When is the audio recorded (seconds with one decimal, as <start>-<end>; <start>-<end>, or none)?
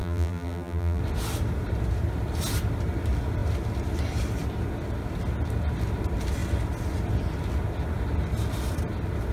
1.0-9.3